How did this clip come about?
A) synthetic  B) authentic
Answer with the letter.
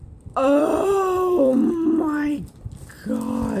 A